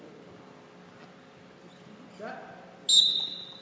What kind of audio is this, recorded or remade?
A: recorded